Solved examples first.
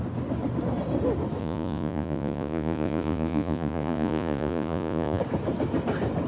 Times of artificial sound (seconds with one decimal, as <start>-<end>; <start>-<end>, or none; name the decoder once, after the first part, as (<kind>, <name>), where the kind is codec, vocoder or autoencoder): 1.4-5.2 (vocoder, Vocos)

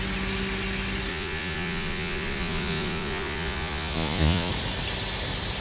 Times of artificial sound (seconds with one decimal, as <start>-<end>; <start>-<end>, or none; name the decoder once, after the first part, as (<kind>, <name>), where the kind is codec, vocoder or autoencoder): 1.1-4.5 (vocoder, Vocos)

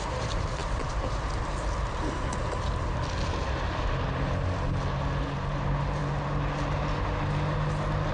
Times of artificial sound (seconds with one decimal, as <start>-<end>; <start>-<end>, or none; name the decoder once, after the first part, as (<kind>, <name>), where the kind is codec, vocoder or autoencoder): none

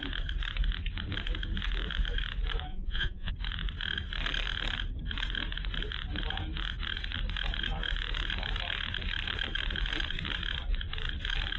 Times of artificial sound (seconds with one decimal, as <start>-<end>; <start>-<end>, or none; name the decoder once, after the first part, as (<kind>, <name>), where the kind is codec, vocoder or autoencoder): 2.7-3.3 (vocoder, Vocos)